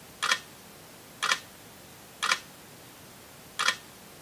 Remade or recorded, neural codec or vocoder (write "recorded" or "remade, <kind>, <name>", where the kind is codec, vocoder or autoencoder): recorded